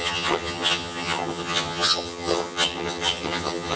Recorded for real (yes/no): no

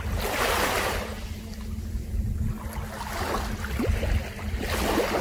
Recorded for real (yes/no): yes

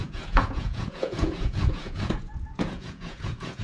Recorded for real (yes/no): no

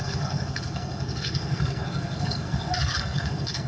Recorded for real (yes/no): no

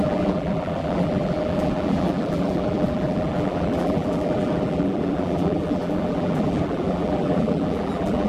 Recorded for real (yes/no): no